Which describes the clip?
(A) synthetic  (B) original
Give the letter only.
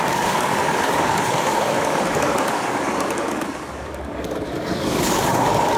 A